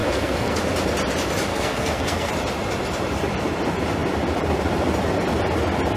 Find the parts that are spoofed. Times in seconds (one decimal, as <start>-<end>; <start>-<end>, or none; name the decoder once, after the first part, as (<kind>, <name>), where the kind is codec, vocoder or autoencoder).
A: 0.0-0.6 (codec, SNAC); 1.5-2.3